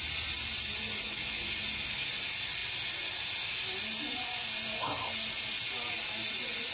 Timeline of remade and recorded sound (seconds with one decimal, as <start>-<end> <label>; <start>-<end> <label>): 0.0-6.7 recorded